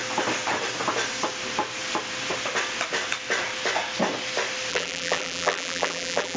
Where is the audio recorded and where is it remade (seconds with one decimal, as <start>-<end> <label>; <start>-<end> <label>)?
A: 0.0-4.7 recorded; 4.7-6.4 remade